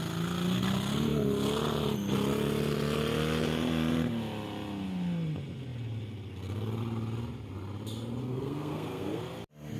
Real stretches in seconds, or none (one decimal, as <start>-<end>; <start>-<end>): 0.0-8.2; 9.2-9.8